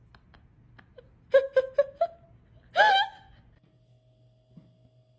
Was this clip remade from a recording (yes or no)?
no